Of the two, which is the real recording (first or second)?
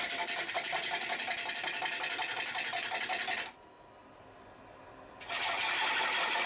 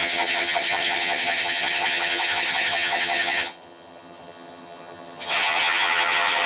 first